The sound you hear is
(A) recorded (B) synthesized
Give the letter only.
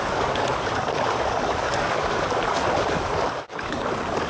B